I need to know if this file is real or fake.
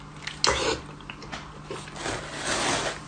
real